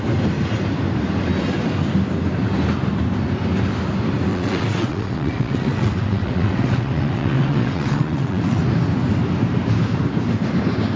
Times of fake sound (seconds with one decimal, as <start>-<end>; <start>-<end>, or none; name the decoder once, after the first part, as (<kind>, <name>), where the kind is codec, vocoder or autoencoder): 4.3-8.6 (vocoder, WaveNeXt)